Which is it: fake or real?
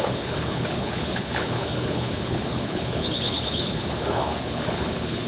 fake